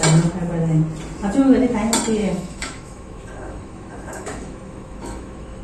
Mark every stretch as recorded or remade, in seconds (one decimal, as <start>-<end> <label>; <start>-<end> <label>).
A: 0.0-2.2 recorded; 2.2-5.6 remade